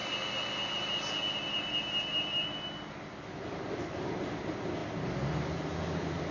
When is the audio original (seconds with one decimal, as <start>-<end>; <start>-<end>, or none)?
0.0-6.3